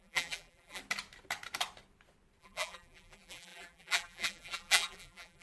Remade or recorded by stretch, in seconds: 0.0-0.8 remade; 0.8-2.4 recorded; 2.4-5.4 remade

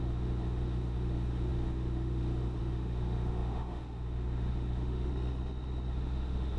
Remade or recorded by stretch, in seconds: 0.0-5.1 remade; 5.1-5.9 recorded; 5.9-6.6 remade

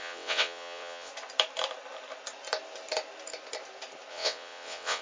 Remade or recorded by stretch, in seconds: 0.0-1.1 remade; 1.1-4.1 recorded; 4.1-5.0 remade

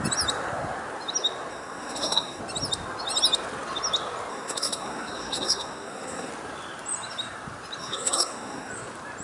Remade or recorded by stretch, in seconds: 0.0-1.5 recorded; 1.5-2.4 remade; 2.4-4.3 recorded; 4.3-6.3 remade; 6.3-7.8 recorded; 7.8-8.7 remade; 8.7-9.2 recorded

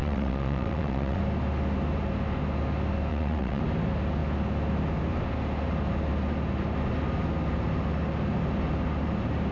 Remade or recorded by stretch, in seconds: 0.0-1.2 remade; 1.2-3.1 recorded; 3.1-3.6 remade; 3.6-9.5 recorded